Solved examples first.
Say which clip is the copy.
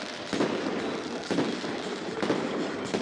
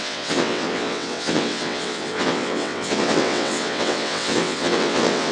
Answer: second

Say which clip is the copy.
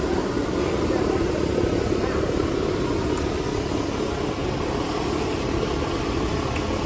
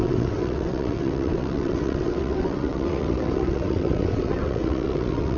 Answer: second